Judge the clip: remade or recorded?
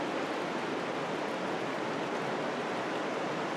recorded